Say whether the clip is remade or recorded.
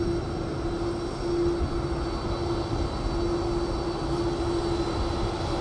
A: recorded